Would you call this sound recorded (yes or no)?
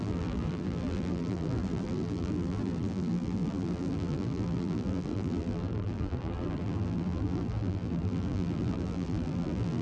no